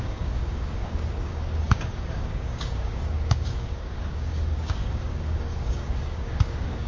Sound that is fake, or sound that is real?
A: fake